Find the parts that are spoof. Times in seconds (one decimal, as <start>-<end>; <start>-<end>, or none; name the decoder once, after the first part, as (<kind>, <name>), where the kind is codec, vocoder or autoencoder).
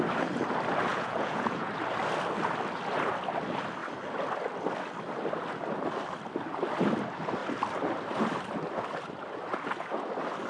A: 0.9-1.7 (vocoder, Vocos)